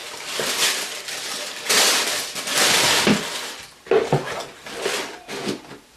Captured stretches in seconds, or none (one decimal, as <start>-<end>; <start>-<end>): 0.0-6.0